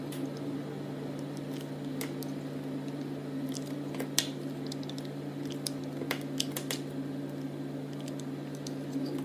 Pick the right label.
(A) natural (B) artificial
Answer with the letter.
A